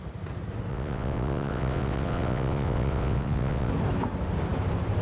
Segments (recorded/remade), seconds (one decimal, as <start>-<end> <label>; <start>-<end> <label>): 0.0-0.7 recorded; 0.7-3.7 remade; 3.7-5.0 recorded